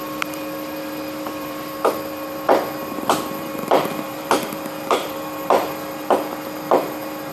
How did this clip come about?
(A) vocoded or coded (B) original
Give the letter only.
A